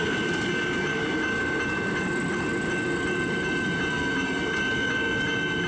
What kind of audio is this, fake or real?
real